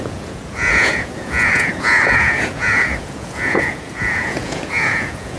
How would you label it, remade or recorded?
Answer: remade